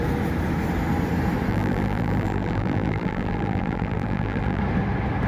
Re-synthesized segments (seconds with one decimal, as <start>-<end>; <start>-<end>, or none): 1.5-4.6